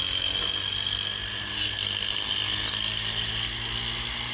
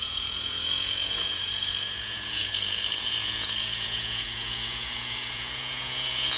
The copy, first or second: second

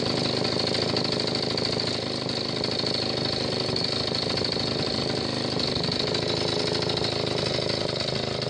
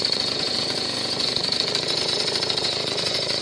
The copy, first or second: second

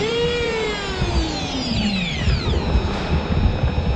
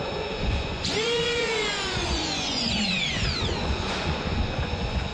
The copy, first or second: second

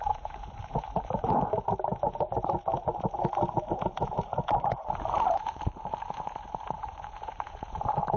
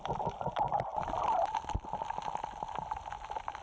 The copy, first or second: first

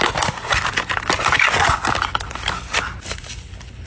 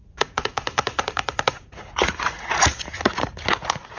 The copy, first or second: second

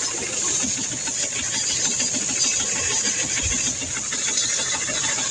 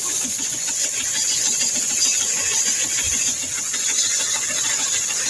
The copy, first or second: second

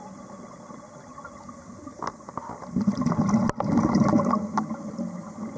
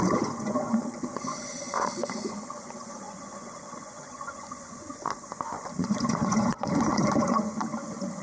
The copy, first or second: second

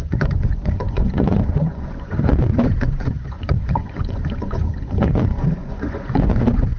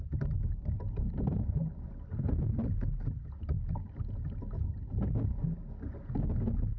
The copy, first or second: first